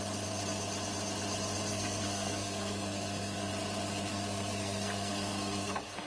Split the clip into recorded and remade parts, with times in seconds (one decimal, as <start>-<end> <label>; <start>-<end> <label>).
0.0-1.7 recorded; 1.7-3.5 remade; 3.5-4.1 recorded; 4.1-6.1 remade